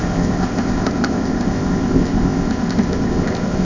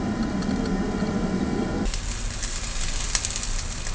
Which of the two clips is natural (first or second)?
second